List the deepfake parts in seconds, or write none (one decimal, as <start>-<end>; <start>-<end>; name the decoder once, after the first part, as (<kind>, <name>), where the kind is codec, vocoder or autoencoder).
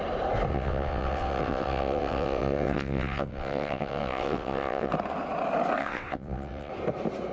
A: 0.5-4.9 (vocoder, WaveNeXt); 5.8-6.7